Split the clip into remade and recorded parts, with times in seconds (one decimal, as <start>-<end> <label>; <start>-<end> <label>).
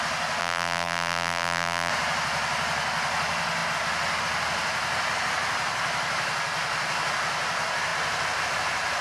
0.0-0.4 recorded; 0.4-1.9 remade; 1.9-9.0 recorded